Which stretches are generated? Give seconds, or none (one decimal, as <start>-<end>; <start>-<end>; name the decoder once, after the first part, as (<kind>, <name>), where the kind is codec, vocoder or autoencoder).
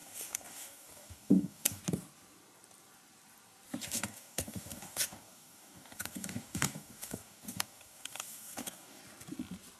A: 0.0-1.8 (codec, DAC); 3.8-9.0